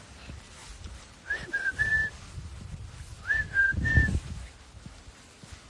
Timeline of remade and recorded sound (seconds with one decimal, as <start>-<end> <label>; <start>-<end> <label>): 0.0-0.6 recorded; 0.6-1.5 remade; 1.5-2.0 recorded; 2.0-4.2 remade; 4.2-5.7 recorded